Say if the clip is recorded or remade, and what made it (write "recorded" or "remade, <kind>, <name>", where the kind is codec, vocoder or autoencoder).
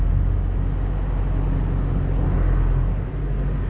recorded